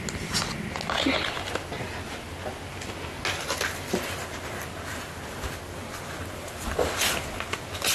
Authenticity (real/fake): real